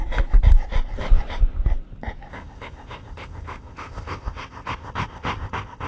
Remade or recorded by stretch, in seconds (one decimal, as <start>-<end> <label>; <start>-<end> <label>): 0.0-2.3 recorded; 2.3-5.9 remade

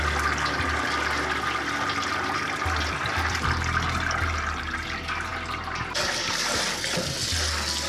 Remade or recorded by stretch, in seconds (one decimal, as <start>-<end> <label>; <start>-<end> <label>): 0.0-7.9 recorded

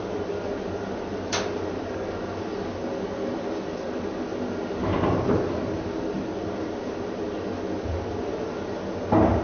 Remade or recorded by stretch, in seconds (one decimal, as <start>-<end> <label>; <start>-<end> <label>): 0.0-9.4 recorded